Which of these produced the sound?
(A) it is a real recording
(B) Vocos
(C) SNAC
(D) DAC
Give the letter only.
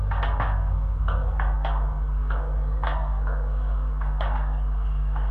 C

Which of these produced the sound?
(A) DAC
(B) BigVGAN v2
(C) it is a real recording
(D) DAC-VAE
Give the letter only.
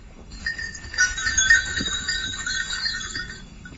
A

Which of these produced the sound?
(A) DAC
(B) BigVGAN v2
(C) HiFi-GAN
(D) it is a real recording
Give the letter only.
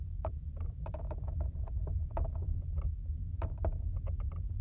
B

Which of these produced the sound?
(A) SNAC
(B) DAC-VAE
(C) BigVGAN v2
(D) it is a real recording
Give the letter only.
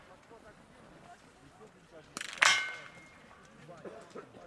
D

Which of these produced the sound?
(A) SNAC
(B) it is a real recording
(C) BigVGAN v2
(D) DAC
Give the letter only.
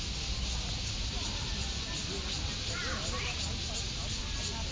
B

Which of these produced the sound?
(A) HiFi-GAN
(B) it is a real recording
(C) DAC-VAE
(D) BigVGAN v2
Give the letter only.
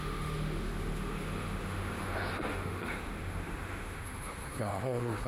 C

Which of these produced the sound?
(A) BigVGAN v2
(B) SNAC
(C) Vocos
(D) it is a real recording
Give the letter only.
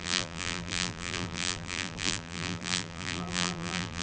A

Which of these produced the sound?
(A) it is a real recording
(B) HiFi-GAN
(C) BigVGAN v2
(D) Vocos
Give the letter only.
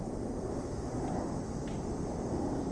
C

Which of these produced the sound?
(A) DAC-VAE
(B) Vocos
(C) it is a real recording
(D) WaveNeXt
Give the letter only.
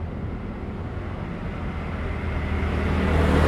C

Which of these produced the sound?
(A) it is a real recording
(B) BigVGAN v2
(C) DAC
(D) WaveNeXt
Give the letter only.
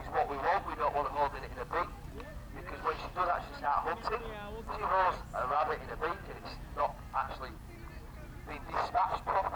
A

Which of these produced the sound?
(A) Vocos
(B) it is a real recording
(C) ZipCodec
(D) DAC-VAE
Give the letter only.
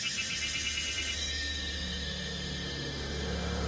D